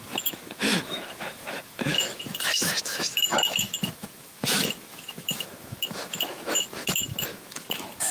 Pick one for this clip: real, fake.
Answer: fake